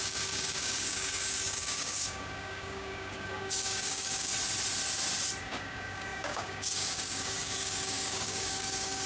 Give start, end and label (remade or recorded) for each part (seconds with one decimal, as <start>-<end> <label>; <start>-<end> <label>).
0.0-4.3 remade; 4.3-5.4 recorded; 5.4-9.1 remade